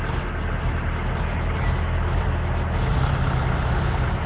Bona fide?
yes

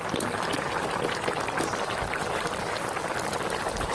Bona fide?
yes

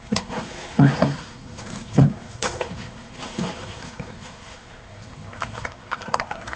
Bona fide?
no